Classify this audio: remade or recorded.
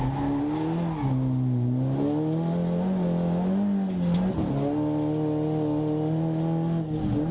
recorded